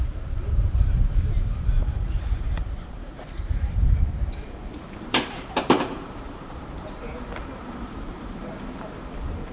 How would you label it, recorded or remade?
remade